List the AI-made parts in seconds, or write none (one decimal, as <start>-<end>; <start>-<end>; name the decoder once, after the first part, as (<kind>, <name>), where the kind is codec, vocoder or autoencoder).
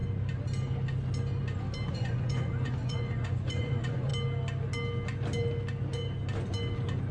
1.9-4.1 (vocoder, Vocos)